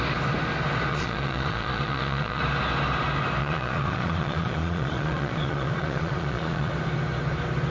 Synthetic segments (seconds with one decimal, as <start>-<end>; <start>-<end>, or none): 0.9-2.4; 3.4-6.7